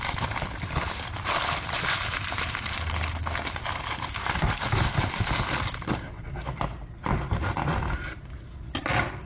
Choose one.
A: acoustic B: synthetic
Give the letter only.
A